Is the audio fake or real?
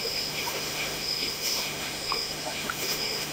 fake